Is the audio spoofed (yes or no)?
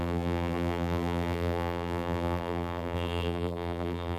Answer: yes